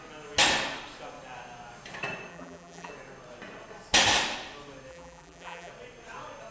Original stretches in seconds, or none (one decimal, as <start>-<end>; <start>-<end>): 0.0-2.3; 2.9-4.9; 5.7-6.5